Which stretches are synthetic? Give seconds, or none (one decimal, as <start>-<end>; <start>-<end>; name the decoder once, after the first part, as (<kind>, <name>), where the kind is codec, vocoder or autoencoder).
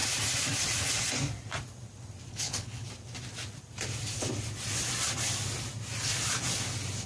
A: 2.3-2.9 (codec, HILCodec)